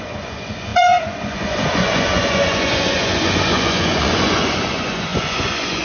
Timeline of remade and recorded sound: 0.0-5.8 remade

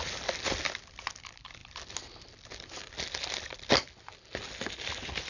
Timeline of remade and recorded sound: 0.0-5.3 recorded

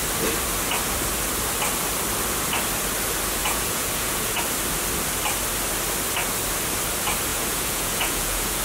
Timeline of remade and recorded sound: 0.0-3.4 recorded; 3.4-4.4 remade; 4.4-7.3 recorded; 7.3-8.6 remade

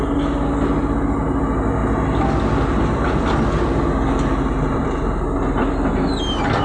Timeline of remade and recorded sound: 0.0-6.6 recorded

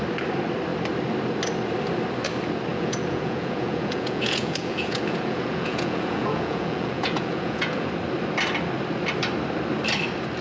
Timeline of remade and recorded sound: 0.0-2.7 recorded; 2.7-7.9 remade; 7.9-10.4 recorded

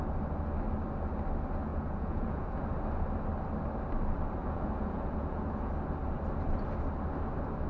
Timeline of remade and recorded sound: 0.0-1.7 recorded; 1.7-2.7 remade; 2.7-4.4 recorded; 4.4-5.7 remade; 5.7-7.7 recorded

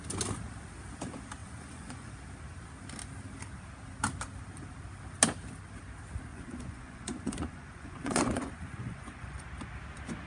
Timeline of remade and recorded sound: 0.0-1.4 recorded; 1.4-2.1 remade; 2.1-6.3 recorded; 6.3-9.4 remade; 9.4-10.3 recorded

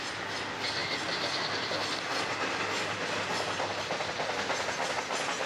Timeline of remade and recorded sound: 0.0-5.5 recorded